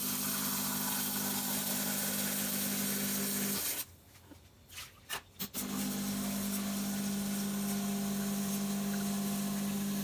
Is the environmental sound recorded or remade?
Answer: recorded